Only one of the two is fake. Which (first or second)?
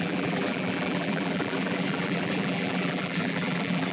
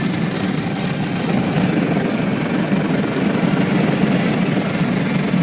first